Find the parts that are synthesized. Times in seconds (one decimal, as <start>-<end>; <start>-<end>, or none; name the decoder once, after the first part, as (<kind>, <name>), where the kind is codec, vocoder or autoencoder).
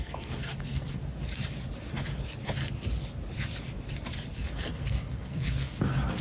0.0-1.0 (codec, SNAC); 4.3-6.2